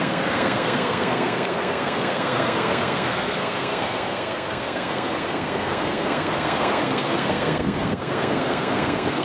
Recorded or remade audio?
remade